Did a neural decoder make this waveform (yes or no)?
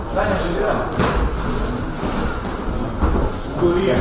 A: no